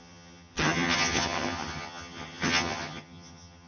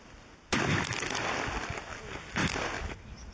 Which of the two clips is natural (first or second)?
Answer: second